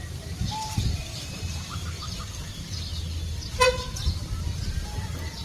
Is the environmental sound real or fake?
real